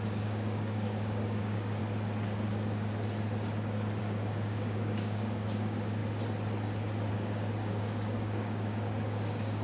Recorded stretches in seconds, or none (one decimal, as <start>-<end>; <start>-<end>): 1.8-4.0; 6.0-7.1